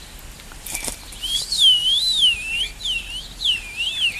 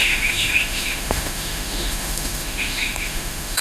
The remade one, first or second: second